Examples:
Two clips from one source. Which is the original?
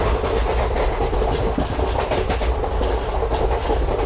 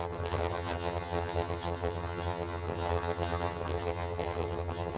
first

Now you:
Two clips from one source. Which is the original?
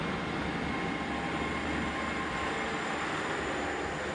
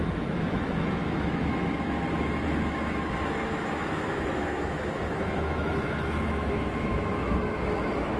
first